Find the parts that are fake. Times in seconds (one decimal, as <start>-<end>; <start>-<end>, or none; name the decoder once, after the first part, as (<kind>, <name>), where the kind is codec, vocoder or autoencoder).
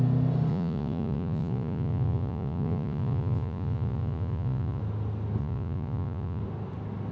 0.5-4.8 (vocoder, Vocos); 5.4-6.4